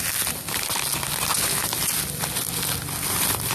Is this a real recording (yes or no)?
yes